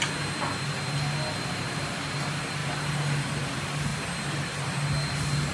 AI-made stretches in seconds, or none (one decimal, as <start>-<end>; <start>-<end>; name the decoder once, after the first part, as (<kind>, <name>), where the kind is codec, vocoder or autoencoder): none